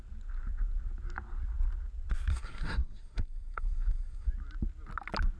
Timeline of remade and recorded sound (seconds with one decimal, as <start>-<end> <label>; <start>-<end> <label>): 0.0-2.3 recorded; 2.3-4.3 remade; 4.3-5.4 recorded